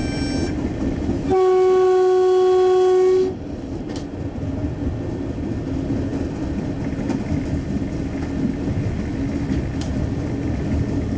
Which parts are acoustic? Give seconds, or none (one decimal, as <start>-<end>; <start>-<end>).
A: 0.0-11.2